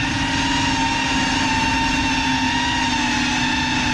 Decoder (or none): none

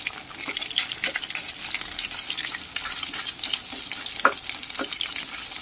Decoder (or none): none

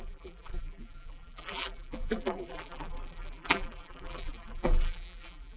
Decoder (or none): vocoder, BigVGAN v2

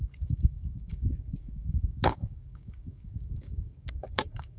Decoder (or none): codec, DAC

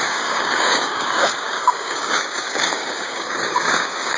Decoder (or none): codec, DAC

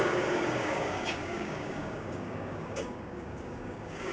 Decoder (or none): codec, DAC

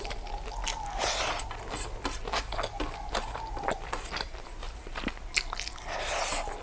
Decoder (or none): none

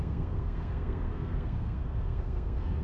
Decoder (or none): codec, SNAC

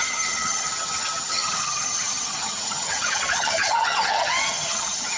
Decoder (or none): vocoder, HiFi-GAN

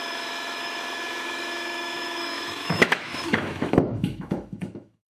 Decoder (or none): autoencoder, DAC-VAE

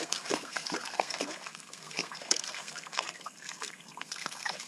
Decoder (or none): codec, SNAC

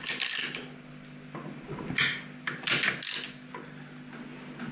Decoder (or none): none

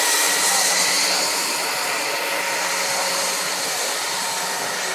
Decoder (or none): none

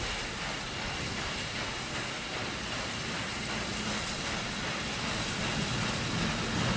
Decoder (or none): none